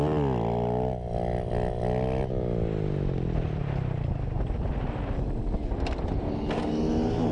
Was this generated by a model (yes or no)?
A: no